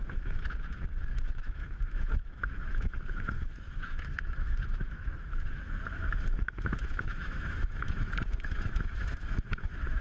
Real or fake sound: fake